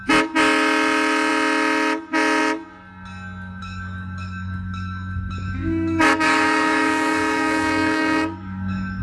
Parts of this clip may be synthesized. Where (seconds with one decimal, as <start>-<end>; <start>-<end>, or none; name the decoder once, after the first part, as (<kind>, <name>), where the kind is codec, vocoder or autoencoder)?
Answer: 3.6-9.0 (codec, DAC)